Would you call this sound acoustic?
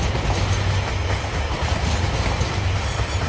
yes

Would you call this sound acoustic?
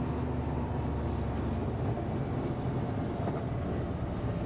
yes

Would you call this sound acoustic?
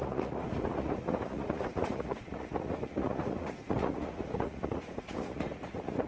no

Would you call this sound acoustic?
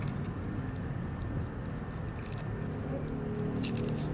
yes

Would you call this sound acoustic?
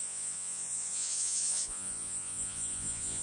no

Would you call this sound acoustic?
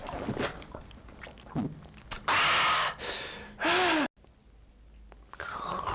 yes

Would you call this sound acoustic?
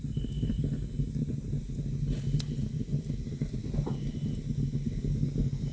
yes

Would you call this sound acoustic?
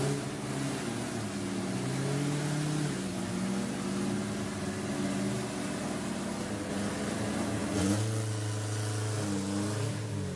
yes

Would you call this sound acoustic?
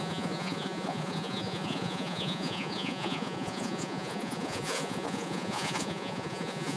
no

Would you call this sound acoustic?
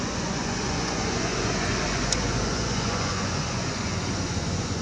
no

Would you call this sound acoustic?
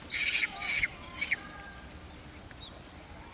yes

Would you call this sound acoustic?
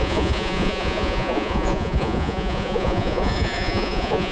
no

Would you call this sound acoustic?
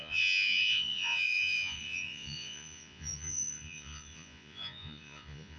no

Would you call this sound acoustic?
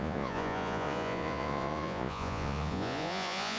no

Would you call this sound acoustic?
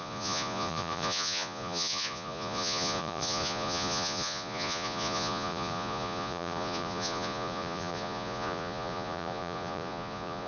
no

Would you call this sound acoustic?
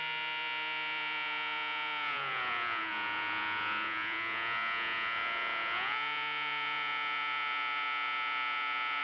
no